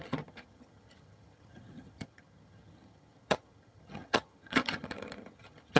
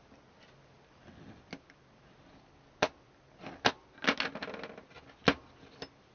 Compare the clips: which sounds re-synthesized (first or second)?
first